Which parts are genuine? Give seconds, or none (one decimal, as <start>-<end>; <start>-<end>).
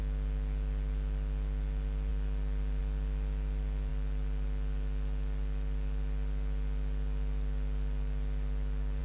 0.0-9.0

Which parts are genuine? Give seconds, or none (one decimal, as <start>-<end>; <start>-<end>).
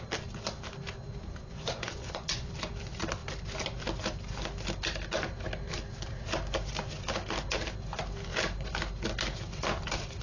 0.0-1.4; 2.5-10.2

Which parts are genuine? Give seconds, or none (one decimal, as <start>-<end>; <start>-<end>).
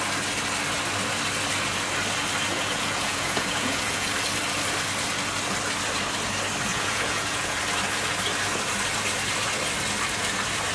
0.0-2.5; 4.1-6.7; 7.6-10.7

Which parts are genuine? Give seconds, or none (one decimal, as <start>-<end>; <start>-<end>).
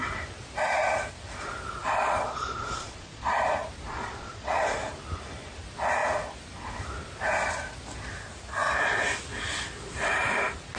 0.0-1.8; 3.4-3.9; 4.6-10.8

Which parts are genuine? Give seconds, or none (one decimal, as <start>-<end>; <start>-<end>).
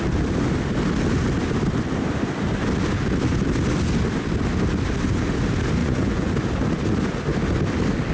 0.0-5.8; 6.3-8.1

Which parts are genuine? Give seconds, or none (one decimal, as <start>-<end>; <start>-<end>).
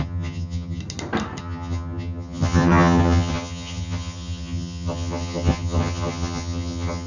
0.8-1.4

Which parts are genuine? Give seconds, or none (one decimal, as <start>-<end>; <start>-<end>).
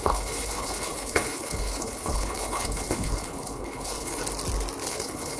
4.2-4.9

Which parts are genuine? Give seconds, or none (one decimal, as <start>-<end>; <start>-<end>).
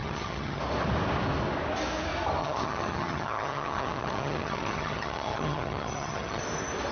0.6-2.4; 6.4-6.9